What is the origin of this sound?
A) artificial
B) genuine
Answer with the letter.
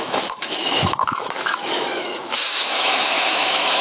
A